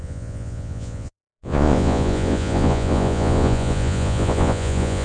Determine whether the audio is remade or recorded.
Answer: remade